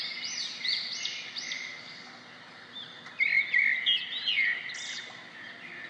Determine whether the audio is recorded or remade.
recorded